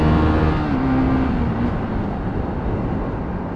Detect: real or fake real